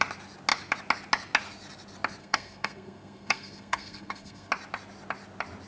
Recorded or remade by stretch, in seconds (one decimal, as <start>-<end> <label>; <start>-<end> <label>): 0.0-2.2 recorded; 2.2-4.5 remade; 4.5-5.7 recorded